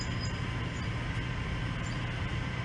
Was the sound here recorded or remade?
recorded